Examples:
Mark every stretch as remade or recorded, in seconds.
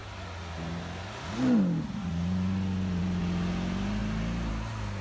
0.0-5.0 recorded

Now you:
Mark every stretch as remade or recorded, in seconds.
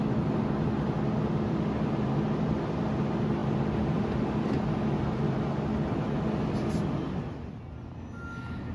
0.0-8.7 recorded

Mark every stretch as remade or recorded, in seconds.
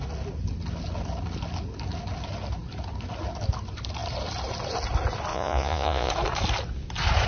0.0-5.3 recorded; 5.3-6.1 remade; 6.1-7.3 recorded